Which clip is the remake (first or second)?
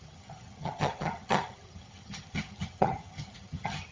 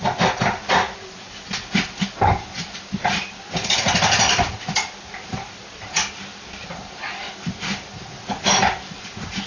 first